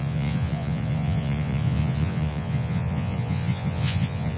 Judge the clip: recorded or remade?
remade